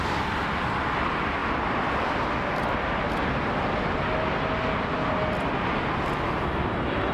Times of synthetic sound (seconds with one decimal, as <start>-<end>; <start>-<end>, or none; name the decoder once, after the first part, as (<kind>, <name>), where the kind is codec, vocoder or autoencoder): none